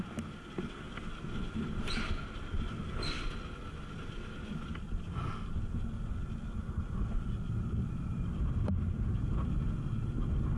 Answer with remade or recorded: recorded